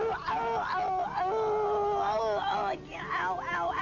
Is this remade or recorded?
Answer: recorded